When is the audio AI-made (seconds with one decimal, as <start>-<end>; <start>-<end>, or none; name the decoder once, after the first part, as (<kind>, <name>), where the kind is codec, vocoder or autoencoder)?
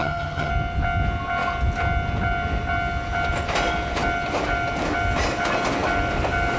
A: 0.0-0.5 (vocoder, HiFi-GAN)